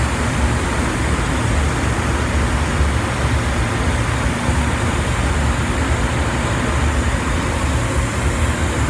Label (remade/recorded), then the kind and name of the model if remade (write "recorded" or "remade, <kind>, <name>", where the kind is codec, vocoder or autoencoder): recorded